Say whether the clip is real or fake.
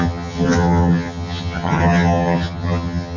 fake